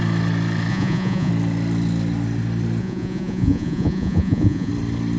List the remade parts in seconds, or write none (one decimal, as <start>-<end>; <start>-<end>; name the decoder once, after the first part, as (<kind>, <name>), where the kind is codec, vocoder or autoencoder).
0.7-1.3 (vocoder, Vocos); 2.8-4.7